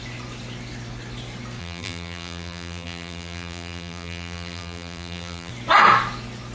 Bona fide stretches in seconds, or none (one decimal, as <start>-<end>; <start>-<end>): 0.0-1.6; 5.5-6.5